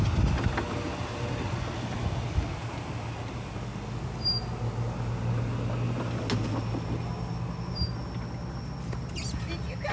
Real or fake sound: real